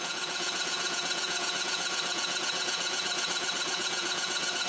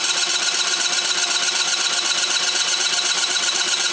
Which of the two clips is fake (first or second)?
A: first